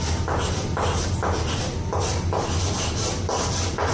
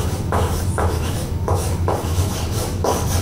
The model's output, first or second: second